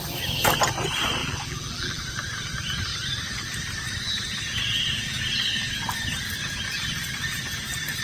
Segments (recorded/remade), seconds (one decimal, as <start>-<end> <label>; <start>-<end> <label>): 0.0-1.2 recorded; 1.2-2.0 remade; 2.0-8.0 recorded